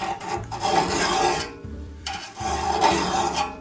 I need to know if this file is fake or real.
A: fake